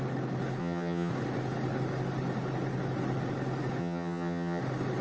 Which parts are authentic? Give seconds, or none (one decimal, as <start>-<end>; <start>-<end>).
0.0-0.6; 1.1-3.8; 4.6-5.0

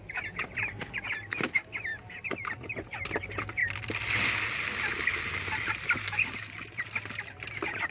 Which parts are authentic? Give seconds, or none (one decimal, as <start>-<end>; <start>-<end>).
1.9-2.5; 3.6-4.8

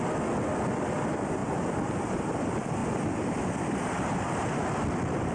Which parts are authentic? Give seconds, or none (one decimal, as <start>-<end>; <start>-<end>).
0.0-5.3

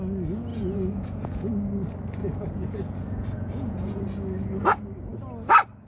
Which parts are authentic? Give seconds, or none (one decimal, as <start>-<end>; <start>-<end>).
0.0-0.5; 1.5-2.2; 4.0-5.9